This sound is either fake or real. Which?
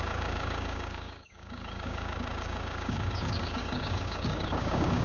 fake